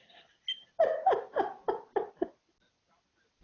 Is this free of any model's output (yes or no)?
yes